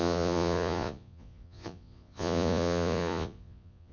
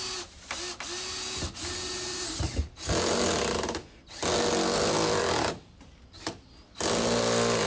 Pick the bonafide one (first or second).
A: second